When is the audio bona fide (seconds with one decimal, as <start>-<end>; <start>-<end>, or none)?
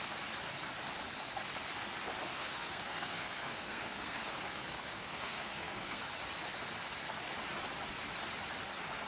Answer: 0.0-2.3; 6.0-9.1